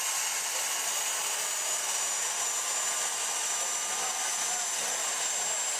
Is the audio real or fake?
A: real